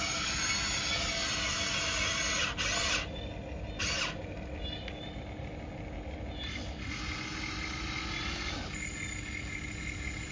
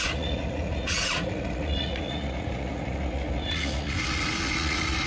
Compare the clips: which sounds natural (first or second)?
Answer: first